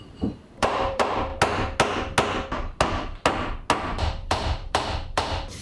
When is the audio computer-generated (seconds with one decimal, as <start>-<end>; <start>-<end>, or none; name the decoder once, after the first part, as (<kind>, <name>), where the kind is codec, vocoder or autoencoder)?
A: 0.0-1.3 (vocoder, BigVGAN v2); 4.0-5.6